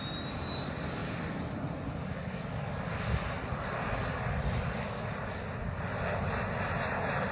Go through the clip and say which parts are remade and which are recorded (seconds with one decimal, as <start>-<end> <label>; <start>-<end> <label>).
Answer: 0.0-1.0 recorded; 1.0-5.4 remade; 5.4-7.3 recorded